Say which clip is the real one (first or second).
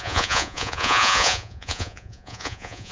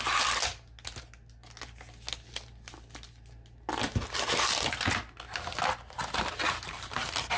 second